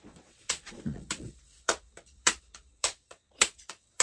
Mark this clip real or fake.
fake